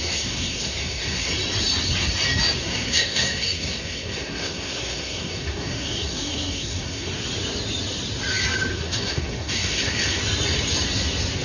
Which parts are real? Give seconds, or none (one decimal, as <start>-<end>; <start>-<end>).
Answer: 1.3-2.6; 7.1-8.7; 10.2-11.4